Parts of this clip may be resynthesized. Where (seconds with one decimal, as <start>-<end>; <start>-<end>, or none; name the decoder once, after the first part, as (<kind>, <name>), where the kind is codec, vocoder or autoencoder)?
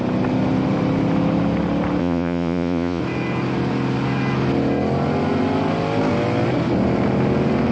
2.0-3.0 (vocoder, Vocos)